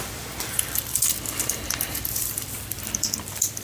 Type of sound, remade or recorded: remade